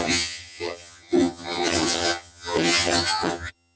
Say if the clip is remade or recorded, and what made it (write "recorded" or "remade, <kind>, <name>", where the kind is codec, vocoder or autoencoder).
remade, vocoder, HiFi-GAN